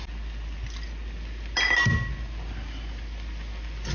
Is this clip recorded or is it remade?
recorded